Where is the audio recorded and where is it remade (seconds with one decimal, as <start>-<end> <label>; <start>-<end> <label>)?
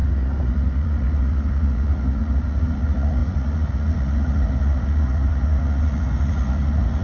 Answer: 0.0-7.0 remade